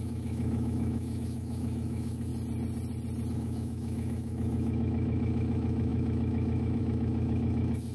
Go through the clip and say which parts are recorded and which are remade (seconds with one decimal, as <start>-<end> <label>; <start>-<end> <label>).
0.0-2.3 remade; 2.3-3.3 recorded; 3.3-7.9 remade